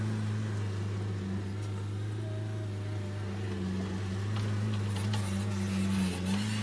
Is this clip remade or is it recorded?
recorded